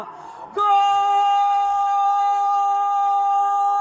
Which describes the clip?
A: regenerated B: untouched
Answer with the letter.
A